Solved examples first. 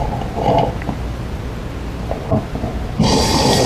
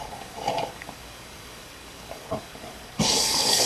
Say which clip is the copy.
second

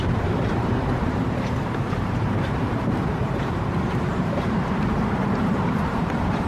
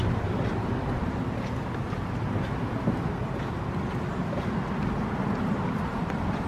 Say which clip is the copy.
first